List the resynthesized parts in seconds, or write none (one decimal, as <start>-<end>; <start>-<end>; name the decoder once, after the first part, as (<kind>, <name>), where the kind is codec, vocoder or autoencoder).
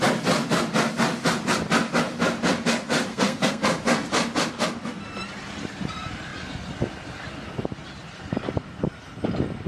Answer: 3.1-3.6 (codec, SNAC)